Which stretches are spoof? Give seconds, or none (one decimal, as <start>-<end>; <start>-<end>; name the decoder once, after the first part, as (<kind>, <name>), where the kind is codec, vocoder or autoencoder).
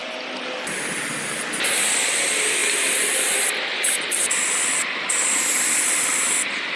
none